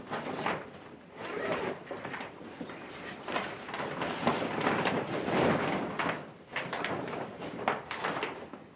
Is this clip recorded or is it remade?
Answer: remade